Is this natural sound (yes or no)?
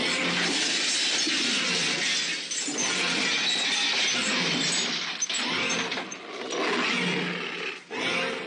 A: yes